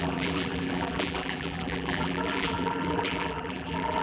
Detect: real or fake fake